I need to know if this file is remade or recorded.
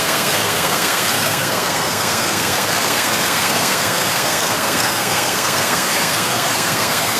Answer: remade